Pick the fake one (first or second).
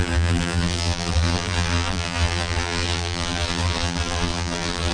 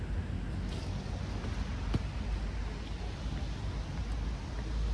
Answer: first